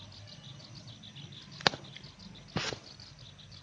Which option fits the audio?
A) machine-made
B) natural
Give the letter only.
B